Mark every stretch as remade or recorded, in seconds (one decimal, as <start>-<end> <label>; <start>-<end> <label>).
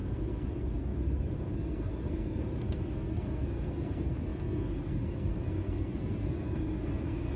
0.0-7.4 remade